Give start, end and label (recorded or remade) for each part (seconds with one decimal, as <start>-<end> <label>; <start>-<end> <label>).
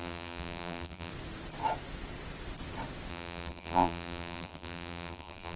0.0-1.1 remade; 1.1-3.1 recorded; 3.1-5.6 remade